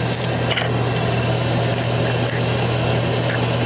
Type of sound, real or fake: real